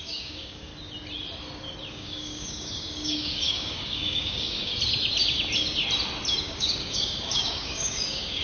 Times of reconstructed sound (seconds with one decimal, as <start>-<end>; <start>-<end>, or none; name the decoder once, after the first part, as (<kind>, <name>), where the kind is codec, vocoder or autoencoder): 0.0-0.7 (codec, DAC); 1.9-4.7; 6.4-8.4